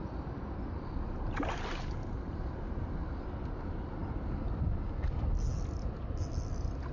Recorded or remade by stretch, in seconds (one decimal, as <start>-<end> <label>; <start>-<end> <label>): 0.0-6.9 recorded

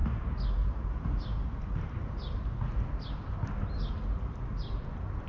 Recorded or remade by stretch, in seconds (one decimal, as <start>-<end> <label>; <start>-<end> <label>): 0.0-5.3 recorded

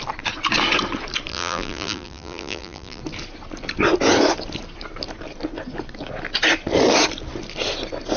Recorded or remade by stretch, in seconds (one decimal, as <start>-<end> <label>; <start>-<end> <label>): 0.0-1.3 recorded; 1.3-3.0 remade; 3.0-8.2 recorded

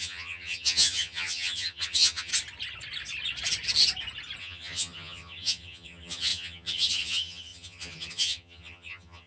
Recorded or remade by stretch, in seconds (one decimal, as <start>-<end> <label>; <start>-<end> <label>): 0.0-2.3 remade; 2.3-4.4 recorded; 4.4-9.3 remade

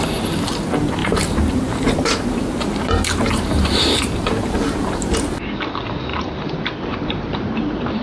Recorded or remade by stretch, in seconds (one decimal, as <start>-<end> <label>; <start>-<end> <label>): 0.0-1.0 recorded; 1.0-5.4 remade; 5.4-6.1 recorded; 6.1-8.0 remade

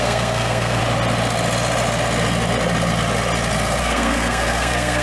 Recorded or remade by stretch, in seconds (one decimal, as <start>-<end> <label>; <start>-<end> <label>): 0.0-0.8 remade; 0.8-3.8 recorded; 3.8-5.0 remade